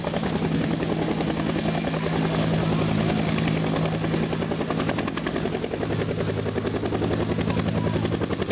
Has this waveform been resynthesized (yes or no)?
no